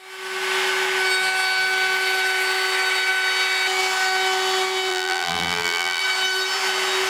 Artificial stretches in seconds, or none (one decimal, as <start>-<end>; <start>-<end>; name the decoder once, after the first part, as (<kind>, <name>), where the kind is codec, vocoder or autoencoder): 4.9-6.0 (vocoder, BigVGAN v2)